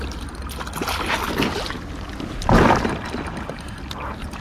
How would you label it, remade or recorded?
recorded